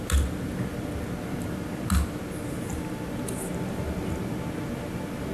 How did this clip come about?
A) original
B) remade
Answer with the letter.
A